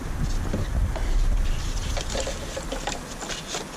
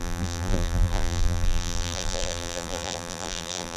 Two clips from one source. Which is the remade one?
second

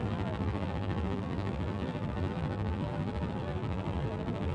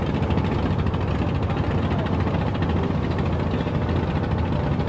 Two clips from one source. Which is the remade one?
first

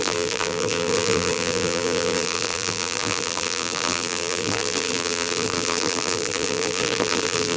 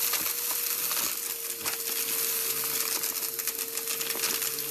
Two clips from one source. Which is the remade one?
first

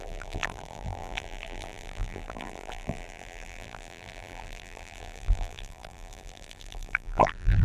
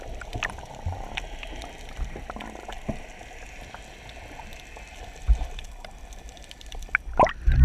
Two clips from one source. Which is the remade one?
first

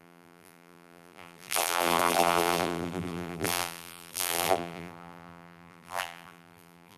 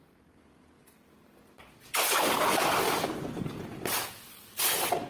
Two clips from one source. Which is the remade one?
first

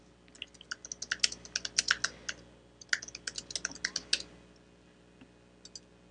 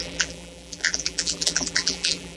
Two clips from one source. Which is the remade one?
second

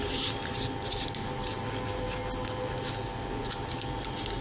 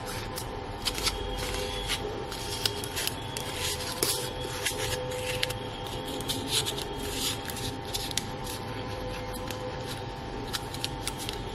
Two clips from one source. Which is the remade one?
second